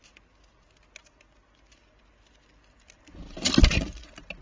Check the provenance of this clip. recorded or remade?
recorded